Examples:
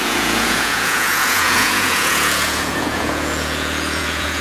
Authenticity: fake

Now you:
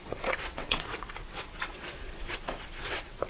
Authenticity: fake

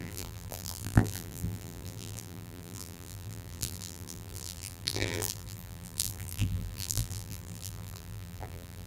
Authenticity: fake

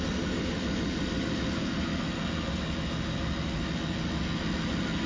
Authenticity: real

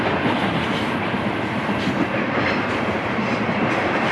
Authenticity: real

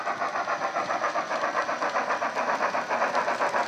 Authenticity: real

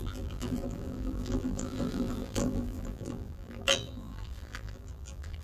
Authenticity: fake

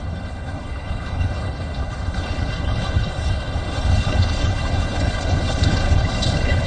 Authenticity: fake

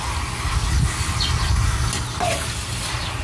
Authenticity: real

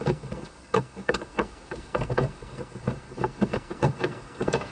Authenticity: fake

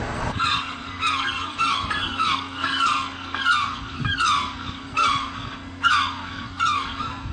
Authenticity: fake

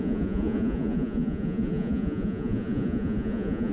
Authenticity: fake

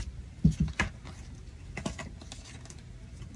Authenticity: real